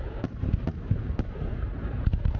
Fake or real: fake